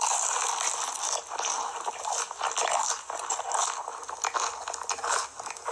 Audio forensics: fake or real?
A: real